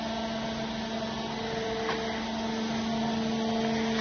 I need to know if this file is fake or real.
real